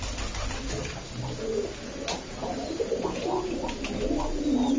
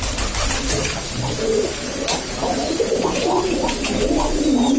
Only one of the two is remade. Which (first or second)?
second